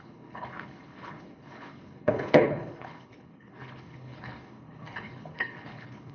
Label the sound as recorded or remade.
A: remade